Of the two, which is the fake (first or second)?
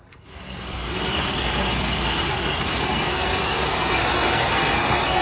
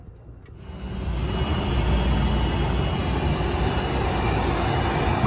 first